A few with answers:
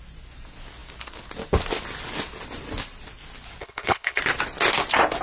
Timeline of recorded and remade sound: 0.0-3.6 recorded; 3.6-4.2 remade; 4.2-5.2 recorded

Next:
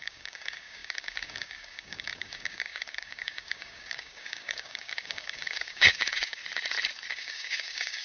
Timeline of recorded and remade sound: 0.0-6.4 remade; 6.4-7.1 recorded; 7.1-8.0 remade

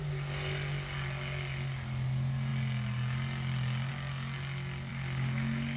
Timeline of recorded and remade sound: 0.0-4.9 recorded; 4.9-5.8 remade

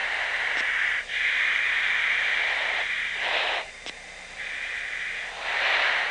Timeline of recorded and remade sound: 0.0-6.1 recorded

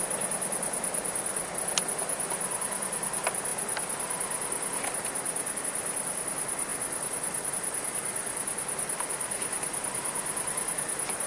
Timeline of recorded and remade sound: 0.0-11.3 recorded